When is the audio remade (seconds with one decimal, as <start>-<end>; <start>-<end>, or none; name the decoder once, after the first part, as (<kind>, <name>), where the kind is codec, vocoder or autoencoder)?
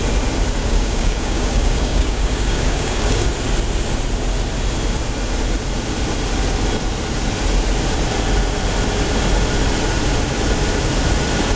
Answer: 0.6-3.3 (codec, DAC)